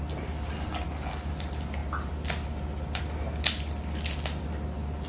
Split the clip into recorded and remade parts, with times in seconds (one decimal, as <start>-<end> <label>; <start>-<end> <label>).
0.0-5.1 recorded